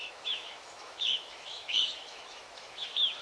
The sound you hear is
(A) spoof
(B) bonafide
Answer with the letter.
A